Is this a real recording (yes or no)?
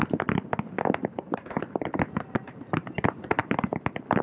no